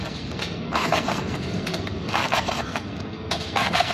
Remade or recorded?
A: remade